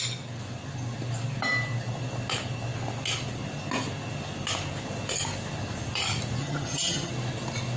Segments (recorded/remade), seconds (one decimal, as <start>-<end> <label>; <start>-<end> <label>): 0.0-6.4 recorded; 6.4-7.1 remade; 7.1-7.8 recorded